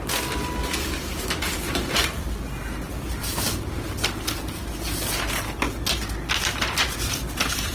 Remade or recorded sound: recorded